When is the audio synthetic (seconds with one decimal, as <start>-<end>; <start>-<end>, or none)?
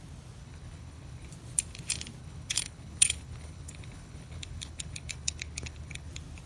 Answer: 0.4-1.3; 2.2-6.1